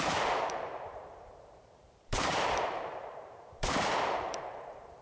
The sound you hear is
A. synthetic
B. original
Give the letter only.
A